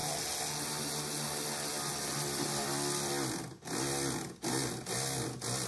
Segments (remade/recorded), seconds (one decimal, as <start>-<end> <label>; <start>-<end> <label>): 0.0-5.7 recorded